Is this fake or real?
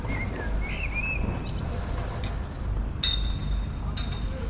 real